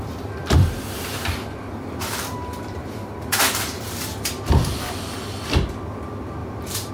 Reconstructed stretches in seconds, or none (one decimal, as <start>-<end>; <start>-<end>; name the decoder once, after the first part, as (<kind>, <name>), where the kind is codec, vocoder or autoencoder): 0.4-4.3 (vocoder, BigVGAN v2); 6.4-6.9